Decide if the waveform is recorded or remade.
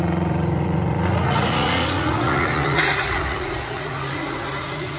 remade